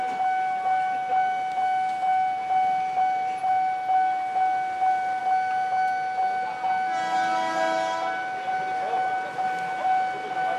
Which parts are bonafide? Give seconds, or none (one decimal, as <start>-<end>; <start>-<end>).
0.0-10.6